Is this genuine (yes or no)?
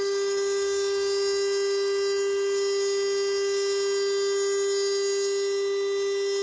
yes